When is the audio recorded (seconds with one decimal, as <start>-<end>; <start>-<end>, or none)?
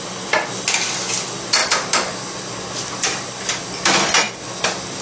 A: 0.0-5.0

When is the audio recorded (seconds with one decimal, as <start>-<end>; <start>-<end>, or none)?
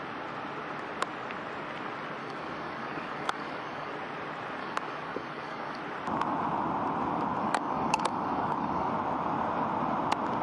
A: 0.0-2.2; 3.9-4.6; 5.8-7.4; 8.9-10.4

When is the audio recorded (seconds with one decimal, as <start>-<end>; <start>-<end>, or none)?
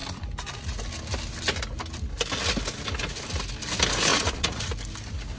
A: 0.0-4.1; 4.7-5.4